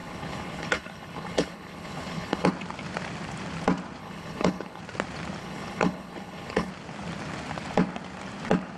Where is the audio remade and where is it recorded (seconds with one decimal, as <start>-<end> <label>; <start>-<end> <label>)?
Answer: 0.0-2.5 remade; 2.5-4.0 recorded; 4.0-4.8 remade; 4.8-5.4 recorded; 5.4-6.7 remade; 6.7-8.8 recorded